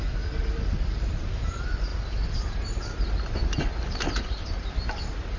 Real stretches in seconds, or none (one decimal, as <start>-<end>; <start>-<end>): 0.0-5.4